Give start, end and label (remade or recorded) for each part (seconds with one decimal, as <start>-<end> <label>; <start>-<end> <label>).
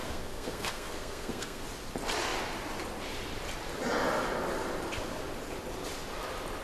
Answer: 0.0-1.6 remade; 1.6-6.6 recorded